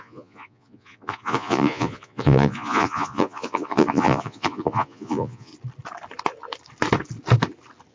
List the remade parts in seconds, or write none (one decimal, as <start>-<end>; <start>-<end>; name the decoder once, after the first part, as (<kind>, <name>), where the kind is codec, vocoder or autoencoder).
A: 0.0-5.5 (vocoder, Vocos)